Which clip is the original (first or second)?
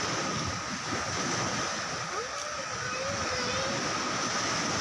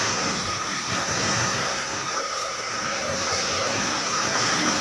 first